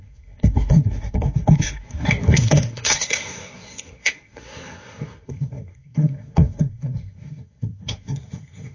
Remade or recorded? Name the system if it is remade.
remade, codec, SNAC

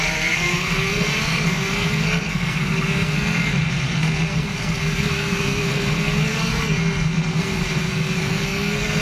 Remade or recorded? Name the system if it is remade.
remade, codec, SNAC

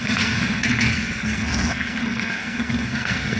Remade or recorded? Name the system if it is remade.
remade, codec, SNAC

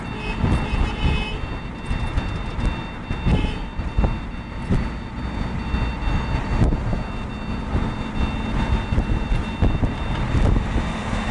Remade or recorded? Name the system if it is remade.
recorded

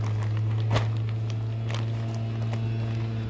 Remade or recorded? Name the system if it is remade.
recorded